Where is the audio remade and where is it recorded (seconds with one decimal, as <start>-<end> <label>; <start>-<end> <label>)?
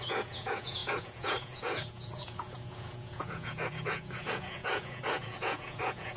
0.0-6.2 remade